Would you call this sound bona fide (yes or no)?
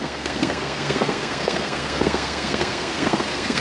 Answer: no